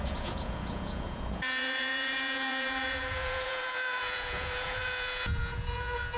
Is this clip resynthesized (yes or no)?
yes